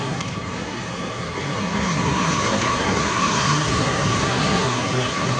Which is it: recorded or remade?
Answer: remade